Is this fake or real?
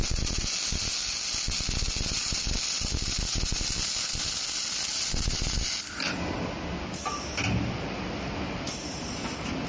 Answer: real